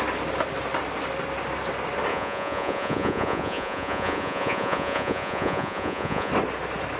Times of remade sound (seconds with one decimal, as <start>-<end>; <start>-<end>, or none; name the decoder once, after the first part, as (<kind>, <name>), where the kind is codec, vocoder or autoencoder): 2.1-6.3 (vocoder, Vocos)